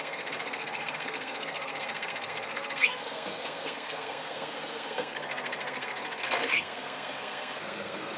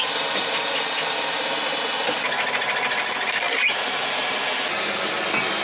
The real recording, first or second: second